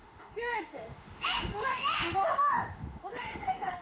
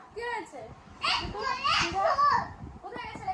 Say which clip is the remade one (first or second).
first